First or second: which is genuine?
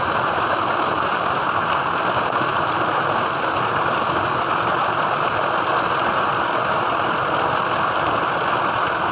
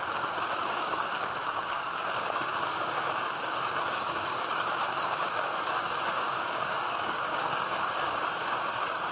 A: first